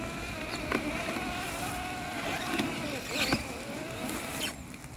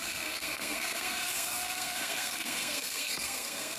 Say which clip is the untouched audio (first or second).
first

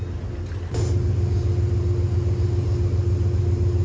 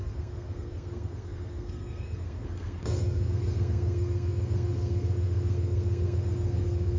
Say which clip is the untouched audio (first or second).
first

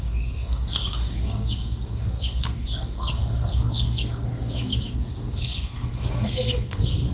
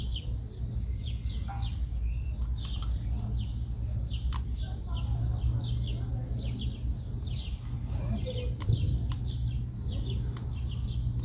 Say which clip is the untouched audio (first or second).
second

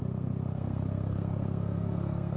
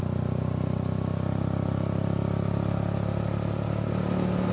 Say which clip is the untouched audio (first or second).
second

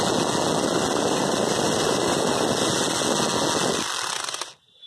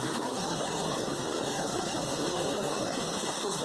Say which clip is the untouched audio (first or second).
first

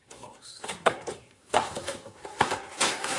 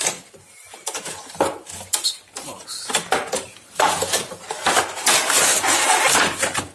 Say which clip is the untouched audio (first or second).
second